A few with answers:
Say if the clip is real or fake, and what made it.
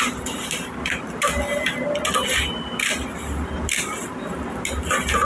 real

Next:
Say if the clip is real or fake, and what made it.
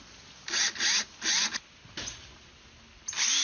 real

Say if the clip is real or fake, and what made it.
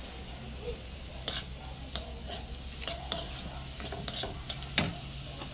real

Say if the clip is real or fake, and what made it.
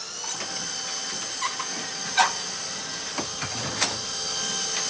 real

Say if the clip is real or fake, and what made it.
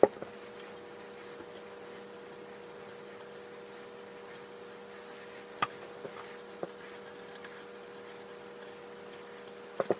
real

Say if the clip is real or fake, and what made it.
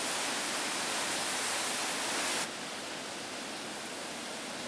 real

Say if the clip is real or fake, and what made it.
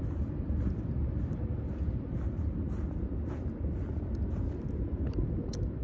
real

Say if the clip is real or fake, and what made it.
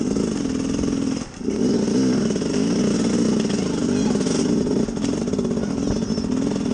real